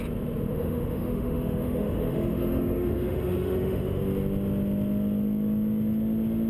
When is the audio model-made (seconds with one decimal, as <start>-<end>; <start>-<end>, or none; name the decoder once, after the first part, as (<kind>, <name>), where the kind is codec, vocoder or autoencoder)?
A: 0.5-4.0 (autoencoder, DAC-VAE)